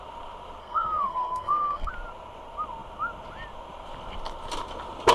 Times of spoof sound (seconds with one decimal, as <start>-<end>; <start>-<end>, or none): 0.6-1.9

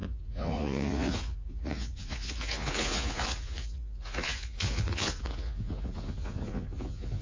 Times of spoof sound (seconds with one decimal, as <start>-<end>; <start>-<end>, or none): 0.0-7.2

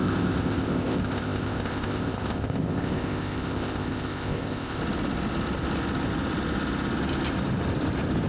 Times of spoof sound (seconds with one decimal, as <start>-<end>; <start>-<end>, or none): 0.0-4.8

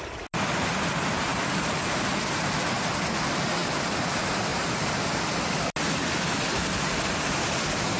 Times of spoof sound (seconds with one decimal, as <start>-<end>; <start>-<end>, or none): 4.5-5.2

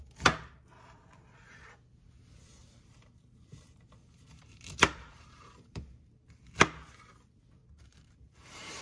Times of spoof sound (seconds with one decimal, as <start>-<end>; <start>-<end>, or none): 2.6-6.4; 7.6-8.8

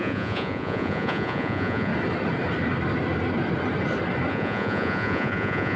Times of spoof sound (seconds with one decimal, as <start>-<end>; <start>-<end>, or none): 0.0-1.9; 4.3-5.8

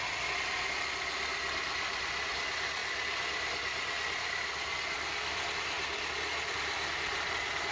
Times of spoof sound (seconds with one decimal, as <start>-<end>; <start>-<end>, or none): 2.8-7.3

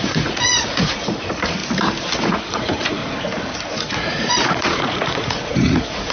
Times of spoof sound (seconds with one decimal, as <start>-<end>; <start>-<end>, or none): 0.0-1.6; 2.2-3.0; 3.9-6.1